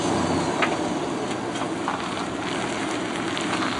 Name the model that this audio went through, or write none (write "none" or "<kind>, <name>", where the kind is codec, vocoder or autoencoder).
none